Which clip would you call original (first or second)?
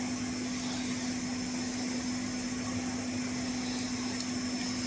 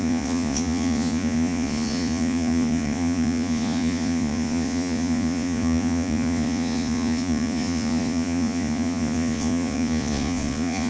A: first